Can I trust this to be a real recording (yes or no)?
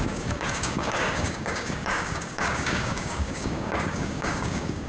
no